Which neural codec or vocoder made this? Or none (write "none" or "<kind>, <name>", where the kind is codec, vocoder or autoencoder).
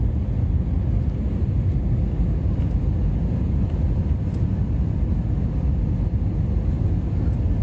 none